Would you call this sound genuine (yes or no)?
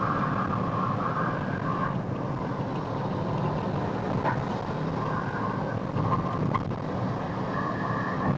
yes